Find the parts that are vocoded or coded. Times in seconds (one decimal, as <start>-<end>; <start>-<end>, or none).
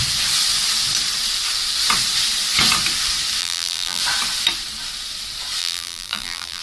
3.4-4.0; 5.6-6.6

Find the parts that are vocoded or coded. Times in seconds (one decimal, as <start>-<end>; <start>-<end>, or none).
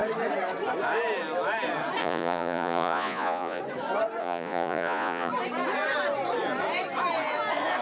2.0-3.6; 4.2-5.3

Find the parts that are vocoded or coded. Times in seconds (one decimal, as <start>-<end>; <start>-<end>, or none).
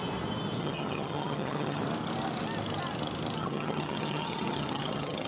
0.6-1.8; 3.4-5.3